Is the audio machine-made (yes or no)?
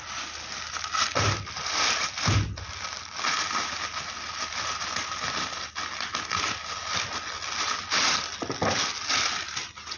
no